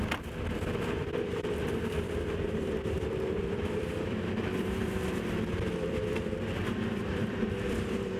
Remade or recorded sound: remade